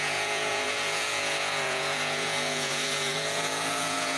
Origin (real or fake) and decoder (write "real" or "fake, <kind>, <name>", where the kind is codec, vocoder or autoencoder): fake, vocoder, Vocos